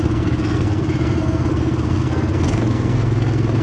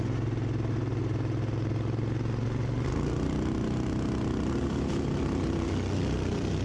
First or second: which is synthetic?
first